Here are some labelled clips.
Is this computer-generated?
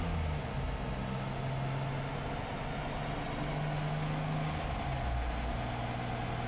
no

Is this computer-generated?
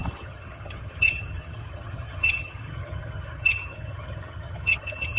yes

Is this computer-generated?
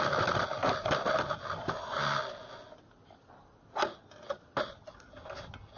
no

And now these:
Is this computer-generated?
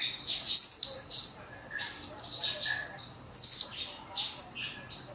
no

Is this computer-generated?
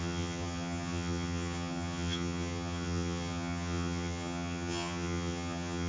yes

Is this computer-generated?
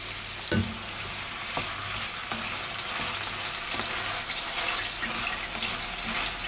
no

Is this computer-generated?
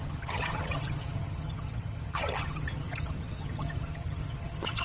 yes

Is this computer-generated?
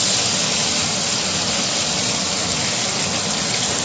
no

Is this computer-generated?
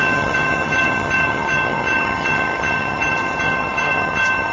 yes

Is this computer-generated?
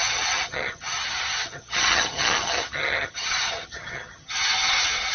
yes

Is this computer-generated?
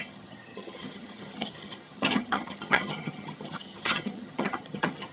yes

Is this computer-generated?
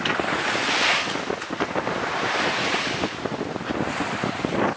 no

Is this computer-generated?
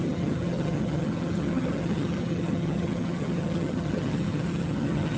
yes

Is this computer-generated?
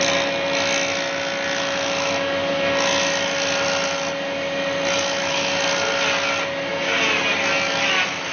no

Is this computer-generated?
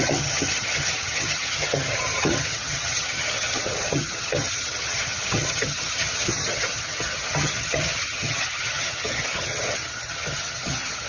yes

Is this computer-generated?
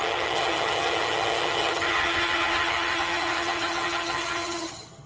yes